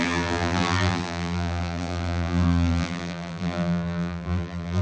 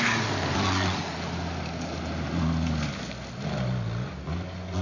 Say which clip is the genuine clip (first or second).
second